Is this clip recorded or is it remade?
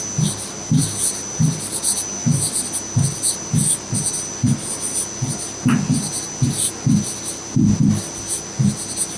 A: recorded